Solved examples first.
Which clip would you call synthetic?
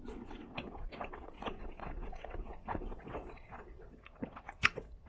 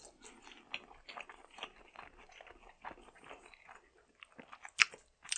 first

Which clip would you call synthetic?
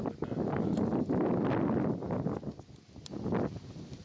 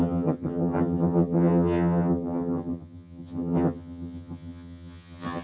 second